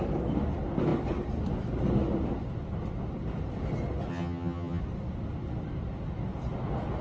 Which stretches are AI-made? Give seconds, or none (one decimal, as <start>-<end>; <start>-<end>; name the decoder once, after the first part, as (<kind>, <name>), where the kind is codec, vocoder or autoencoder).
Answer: 4.1-4.8 (vocoder, HiFi-GAN)